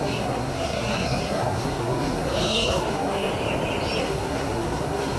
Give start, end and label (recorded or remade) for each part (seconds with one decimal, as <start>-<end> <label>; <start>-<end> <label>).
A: 0.0-3.3 remade; 3.3-4.0 recorded; 4.0-5.2 remade